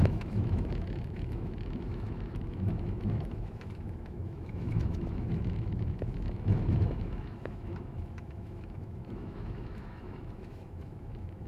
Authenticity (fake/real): fake